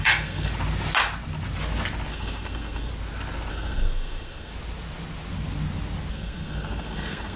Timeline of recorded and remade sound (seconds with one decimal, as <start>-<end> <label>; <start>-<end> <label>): 0.0-0.5 remade; 0.5-2.1 recorded; 2.1-2.9 remade; 2.9-3.5 recorded; 3.5-4.5 remade; 4.5-6.1 recorded; 6.1-7.4 remade